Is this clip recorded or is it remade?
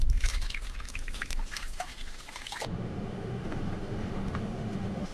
remade